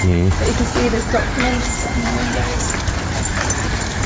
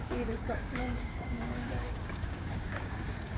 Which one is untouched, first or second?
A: first